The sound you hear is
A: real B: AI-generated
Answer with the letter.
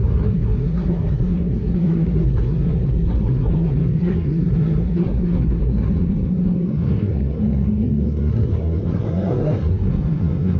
B